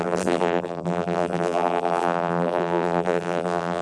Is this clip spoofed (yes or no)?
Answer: yes